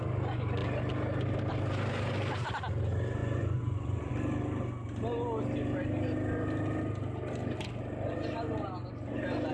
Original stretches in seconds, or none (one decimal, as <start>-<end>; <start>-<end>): 0.0-3.2; 4.1-9.5